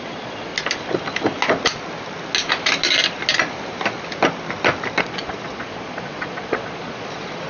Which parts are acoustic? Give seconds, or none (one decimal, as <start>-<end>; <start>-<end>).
0.5-5.0